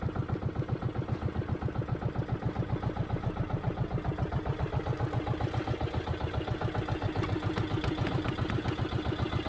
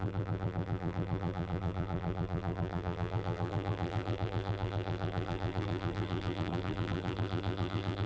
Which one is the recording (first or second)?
first